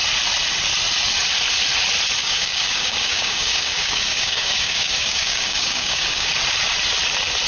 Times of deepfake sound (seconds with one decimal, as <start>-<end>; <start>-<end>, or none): 2.2-6.3